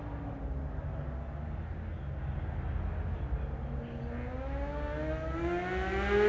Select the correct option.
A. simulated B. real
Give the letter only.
B